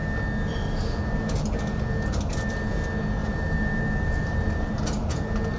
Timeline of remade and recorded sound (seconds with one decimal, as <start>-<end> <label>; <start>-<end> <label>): 0.0-3.2 recorded; 3.2-4.7 remade; 4.7-5.6 recorded